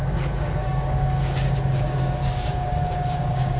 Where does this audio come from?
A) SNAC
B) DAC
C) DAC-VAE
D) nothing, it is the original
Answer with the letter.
B